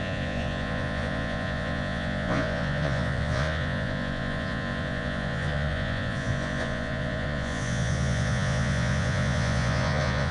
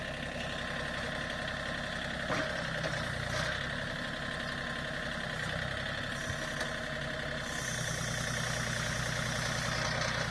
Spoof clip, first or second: first